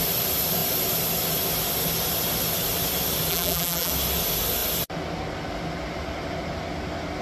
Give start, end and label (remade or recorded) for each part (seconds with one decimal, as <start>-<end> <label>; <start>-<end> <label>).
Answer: 0.0-3.3 recorded; 3.3-3.9 remade; 3.9-7.2 recorded